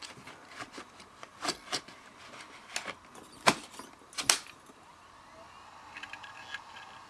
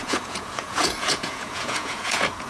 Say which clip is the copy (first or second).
second